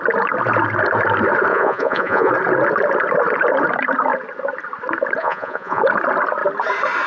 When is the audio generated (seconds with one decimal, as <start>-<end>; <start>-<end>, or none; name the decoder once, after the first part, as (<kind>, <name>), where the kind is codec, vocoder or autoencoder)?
1.5-2.3 (vocoder, Vocos); 5.2-5.8